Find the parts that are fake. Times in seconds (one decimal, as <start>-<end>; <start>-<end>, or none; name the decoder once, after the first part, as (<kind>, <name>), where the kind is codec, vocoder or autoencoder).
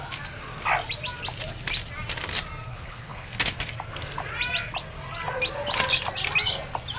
2.7-3.3 (codec, HILCodec)